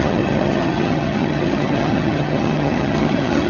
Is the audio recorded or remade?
remade